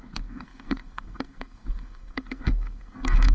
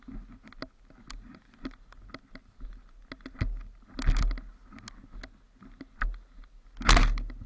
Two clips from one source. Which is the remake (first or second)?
first